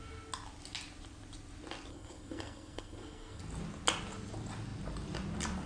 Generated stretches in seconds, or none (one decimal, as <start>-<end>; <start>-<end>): 1.9-3.4